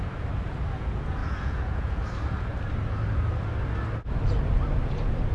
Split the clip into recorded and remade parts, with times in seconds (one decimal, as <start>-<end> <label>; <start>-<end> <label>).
0.0-1.2 recorded; 1.2-2.0 remade; 2.0-5.3 recorded